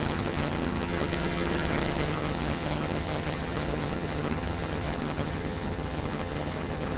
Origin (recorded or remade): remade